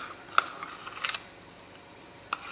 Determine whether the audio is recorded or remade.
recorded